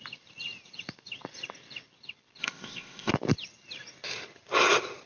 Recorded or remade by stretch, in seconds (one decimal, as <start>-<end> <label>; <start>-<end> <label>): 0.0-2.4 recorded; 2.4-3.1 remade; 3.1-5.1 recorded